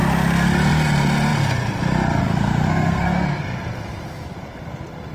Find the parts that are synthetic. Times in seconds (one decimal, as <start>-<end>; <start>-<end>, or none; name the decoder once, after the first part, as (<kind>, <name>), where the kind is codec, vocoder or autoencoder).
2.2-3.4 (codec, SNAC)